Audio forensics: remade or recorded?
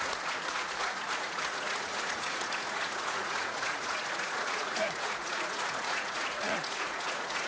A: remade